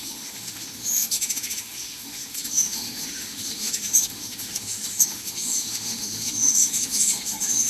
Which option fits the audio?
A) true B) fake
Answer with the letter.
B